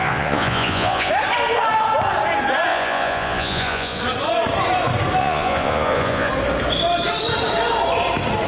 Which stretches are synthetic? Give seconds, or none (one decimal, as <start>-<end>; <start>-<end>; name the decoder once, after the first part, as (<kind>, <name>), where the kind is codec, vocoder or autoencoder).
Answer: 0.0-1.1 (vocoder, Vocos); 2.7-4.0; 5.2-6.3

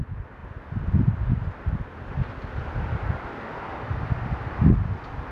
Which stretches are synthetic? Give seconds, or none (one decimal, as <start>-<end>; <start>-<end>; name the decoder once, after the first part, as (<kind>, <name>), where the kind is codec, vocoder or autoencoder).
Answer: none

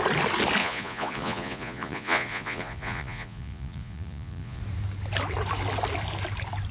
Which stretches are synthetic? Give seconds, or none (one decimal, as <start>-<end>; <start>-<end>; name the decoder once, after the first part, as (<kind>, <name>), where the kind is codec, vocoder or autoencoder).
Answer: 0.6-4.6 (vocoder, Vocos)

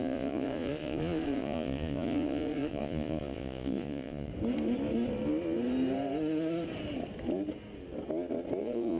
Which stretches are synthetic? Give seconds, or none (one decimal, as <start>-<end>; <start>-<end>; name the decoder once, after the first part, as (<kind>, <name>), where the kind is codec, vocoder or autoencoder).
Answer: 0.0-4.3 (vocoder, Vocos); 8.6-9.0

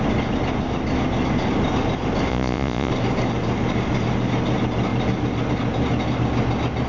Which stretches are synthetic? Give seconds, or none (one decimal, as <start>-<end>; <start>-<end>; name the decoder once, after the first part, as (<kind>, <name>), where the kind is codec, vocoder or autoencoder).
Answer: 2.3-2.9 (vocoder, Vocos)